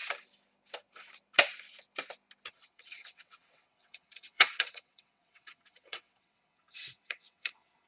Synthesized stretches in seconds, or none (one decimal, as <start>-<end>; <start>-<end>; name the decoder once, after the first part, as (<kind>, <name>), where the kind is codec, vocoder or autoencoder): 2.5-7.9 (vocoder, WaveNeXt)